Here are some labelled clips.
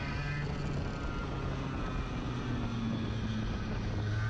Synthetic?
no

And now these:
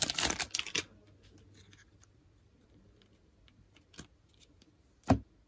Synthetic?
no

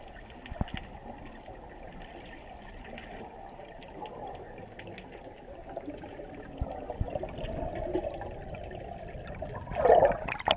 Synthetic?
no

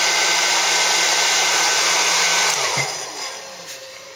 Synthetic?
yes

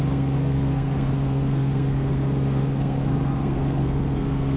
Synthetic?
yes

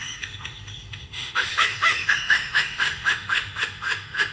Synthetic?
yes